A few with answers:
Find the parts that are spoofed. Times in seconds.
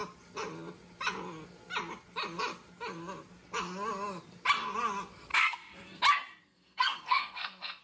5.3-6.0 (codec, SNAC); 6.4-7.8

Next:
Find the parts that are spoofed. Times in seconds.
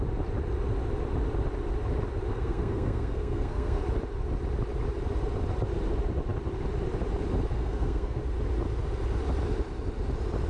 2.3-3.8 (codec, SNAC); 7.5-8.2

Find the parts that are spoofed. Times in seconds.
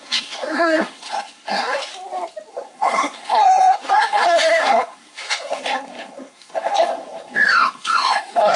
0.0-1.9 (codec, SNAC); 2.5-8.6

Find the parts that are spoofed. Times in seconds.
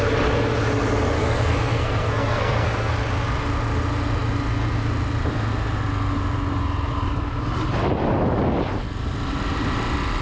1.2-2.9 (codec, SNAC)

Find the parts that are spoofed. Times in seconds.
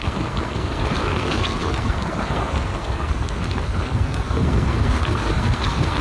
0.0-6.0 (codec, SNAC)